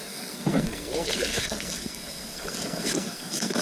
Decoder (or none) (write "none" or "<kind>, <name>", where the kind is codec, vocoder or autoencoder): codec, SNAC